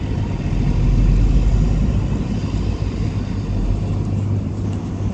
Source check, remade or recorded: recorded